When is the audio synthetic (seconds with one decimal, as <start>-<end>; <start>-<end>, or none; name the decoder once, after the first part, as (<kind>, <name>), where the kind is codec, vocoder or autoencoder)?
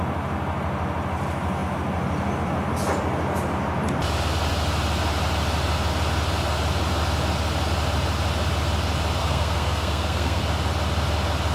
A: 9.2-10.4 (codec, SNAC)